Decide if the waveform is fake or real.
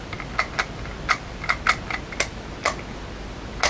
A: real